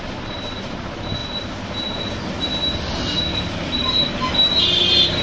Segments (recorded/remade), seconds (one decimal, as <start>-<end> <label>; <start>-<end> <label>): 0.0-5.2 recorded